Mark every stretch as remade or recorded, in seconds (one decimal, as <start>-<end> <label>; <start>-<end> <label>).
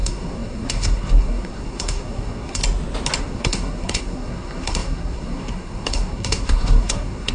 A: 0.0-2.6 remade; 2.6-3.2 recorded; 3.2-7.3 remade